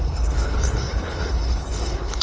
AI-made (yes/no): yes